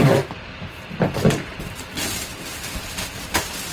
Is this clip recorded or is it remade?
recorded